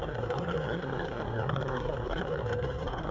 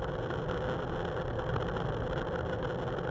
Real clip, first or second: second